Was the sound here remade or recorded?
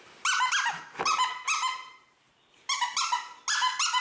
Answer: recorded